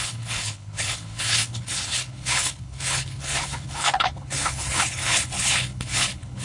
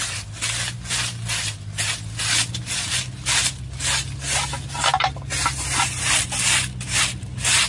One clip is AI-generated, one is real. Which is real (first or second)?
second